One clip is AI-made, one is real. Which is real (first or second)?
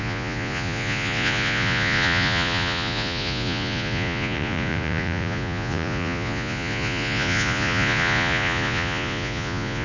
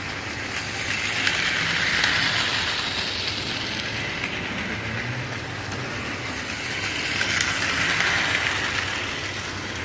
second